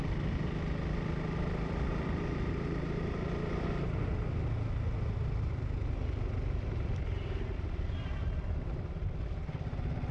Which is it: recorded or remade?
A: recorded